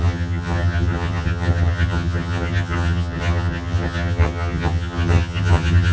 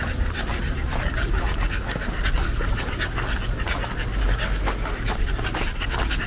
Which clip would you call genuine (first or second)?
second